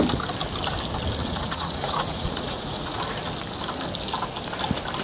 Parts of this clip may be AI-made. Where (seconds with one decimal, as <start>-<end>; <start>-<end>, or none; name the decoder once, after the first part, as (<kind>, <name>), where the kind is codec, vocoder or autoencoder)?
1.2-3.0 (vocoder, Vocos)